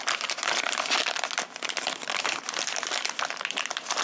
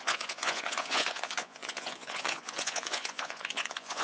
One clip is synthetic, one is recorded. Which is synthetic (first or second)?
second